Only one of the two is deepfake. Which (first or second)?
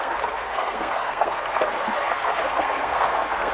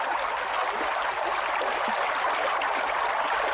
first